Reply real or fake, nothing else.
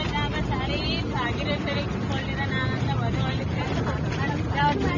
real